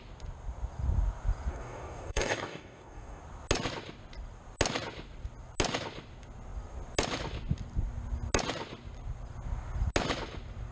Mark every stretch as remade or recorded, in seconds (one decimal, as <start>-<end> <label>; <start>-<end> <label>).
0.0-1.5 recorded; 1.5-3.2 remade; 3.2-10.7 recorded

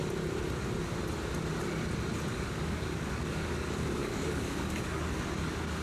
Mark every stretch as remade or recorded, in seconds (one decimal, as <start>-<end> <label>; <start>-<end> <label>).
0.0-2.3 recorded; 2.3-5.8 remade

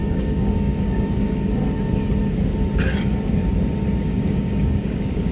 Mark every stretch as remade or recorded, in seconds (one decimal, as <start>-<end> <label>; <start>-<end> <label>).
0.0-1.5 remade; 1.5-4.1 recorded; 4.1-5.3 remade

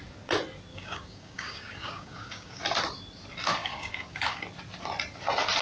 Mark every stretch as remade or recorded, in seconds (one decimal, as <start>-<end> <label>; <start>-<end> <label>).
0.0-0.7 recorded; 0.7-2.6 remade; 2.6-3.6 recorded; 3.6-4.4 remade; 4.4-5.6 recorded

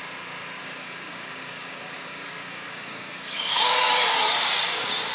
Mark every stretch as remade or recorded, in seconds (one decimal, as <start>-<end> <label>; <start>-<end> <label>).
0.0-0.6 recorded; 0.6-3.7 remade; 3.7-5.1 recorded

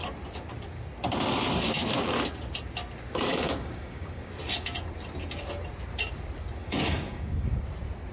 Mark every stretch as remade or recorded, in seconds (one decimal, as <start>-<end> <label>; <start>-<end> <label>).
0.0-3.3 recorded; 3.3-4.3 remade; 4.3-6.6 recorded; 6.6-7.6 remade; 7.6-8.1 recorded

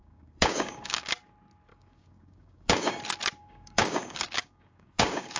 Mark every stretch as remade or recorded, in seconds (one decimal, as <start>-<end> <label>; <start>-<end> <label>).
0.0-1.1 remade; 1.1-1.7 recorded; 1.7-3.0 remade; 3.0-3.4 recorded; 3.4-5.4 remade

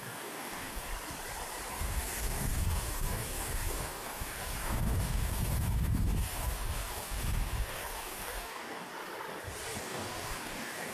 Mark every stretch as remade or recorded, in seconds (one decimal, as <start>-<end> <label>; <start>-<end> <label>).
0.0-0.9 remade; 0.9-1.7 recorded; 1.7-8.9 remade; 8.9-9.8 recorded; 9.8-10.9 remade